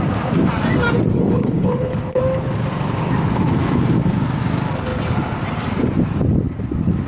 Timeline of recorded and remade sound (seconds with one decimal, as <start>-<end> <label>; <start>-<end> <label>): 0.0-1.2 recorded; 1.2-2.2 remade; 2.2-7.1 recorded